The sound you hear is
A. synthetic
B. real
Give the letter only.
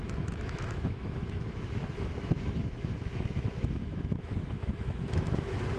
A